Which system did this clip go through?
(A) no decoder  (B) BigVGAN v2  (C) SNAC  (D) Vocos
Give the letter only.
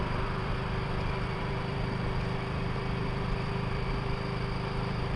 B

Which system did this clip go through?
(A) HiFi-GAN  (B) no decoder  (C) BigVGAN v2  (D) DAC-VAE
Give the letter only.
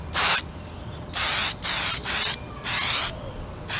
B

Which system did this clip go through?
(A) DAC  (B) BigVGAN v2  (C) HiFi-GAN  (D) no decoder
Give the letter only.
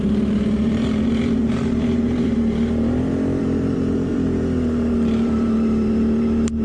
B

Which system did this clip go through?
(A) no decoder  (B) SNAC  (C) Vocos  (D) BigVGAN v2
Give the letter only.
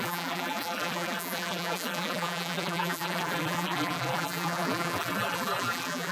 D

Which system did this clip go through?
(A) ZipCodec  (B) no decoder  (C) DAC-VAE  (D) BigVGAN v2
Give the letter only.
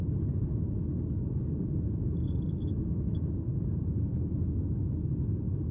B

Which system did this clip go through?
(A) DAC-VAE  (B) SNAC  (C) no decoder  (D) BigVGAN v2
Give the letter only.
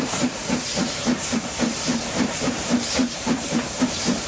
D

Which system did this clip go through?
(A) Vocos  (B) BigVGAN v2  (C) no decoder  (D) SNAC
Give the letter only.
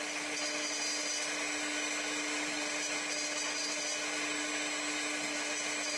C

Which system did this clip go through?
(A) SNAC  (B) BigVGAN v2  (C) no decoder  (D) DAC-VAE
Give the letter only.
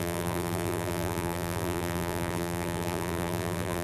B